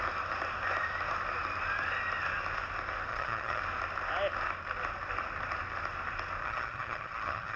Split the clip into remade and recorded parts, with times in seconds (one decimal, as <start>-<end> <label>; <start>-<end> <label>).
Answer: 0.0-3.1 recorded; 3.1-3.6 remade; 3.6-6.4 recorded; 6.4-7.6 remade